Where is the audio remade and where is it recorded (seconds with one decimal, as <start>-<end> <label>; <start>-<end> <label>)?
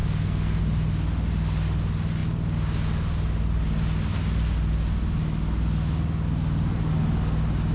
0.0-0.6 remade; 0.6-7.7 recorded